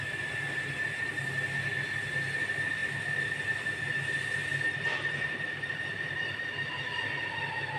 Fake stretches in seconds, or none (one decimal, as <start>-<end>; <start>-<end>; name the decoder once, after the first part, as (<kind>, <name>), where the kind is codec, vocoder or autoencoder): none